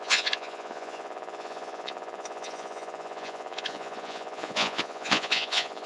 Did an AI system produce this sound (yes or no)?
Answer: yes